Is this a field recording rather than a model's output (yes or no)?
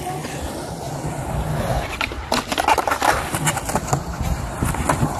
yes